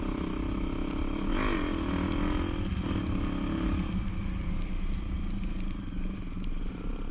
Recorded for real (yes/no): yes